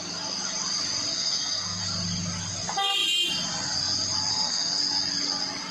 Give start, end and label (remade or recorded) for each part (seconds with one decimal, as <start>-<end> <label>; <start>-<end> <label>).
0.0-1.1 recorded; 1.1-1.8 remade; 1.8-4.3 recorded; 4.3-4.8 remade; 4.8-5.7 recorded